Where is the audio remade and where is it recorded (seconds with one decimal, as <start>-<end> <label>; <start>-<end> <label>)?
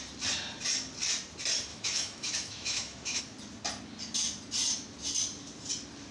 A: 0.0-1.7 recorded; 1.7-3.2 remade; 3.2-6.1 recorded